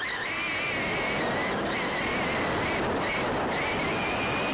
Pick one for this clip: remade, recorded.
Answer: recorded